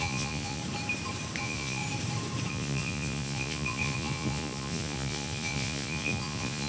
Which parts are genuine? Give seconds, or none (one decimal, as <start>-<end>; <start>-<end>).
0.6-1.4; 1.8-2.5